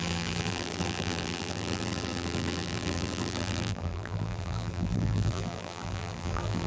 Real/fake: fake